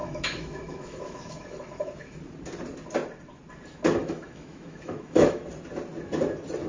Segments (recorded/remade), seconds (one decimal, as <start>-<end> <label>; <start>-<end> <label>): 0.0-2.2 remade; 2.2-4.0 recorded; 4.0-5.5 remade; 5.5-6.7 recorded